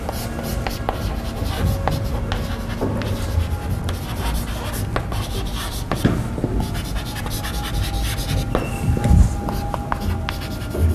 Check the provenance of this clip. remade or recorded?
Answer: recorded